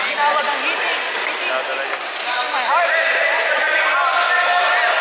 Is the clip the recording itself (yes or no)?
yes